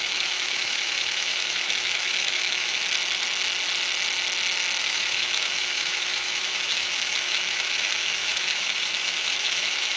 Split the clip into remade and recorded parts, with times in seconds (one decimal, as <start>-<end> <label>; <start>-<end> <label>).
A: 0.0-2.8 remade; 2.8-4.8 recorded; 4.8-10.0 remade